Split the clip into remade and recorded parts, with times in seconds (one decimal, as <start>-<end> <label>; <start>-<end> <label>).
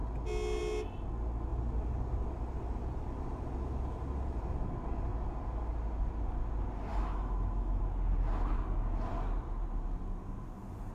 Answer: 0.0-6.9 recorded; 6.9-7.8 remade; 7.8-10.9 recorded